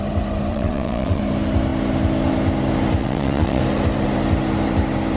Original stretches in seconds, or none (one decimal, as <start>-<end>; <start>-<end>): 0.0-0.5; 1.2-3.0; 3.6-5.2